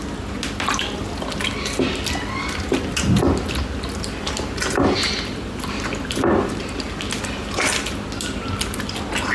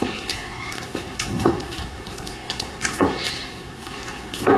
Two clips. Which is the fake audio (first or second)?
second